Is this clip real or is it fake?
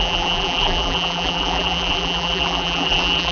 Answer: fake